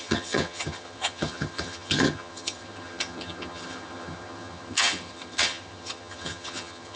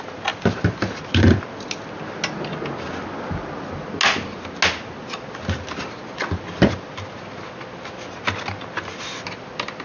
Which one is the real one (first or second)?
second